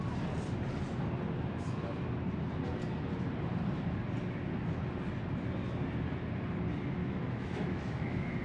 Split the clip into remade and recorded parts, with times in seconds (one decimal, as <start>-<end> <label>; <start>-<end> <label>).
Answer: 0.0-7.0 recorded; 7.0-8.4 remade